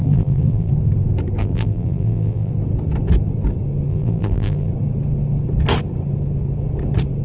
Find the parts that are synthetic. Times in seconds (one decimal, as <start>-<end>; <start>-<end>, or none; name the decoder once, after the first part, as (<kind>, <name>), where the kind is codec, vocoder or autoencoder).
0.0-0.7 (vocoder, BigVGAN v2); 1.4-2.5; 3.9-4.7